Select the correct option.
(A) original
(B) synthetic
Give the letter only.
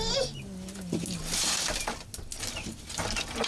A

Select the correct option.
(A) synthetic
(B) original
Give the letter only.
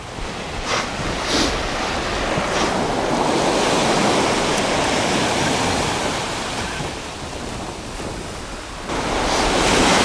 B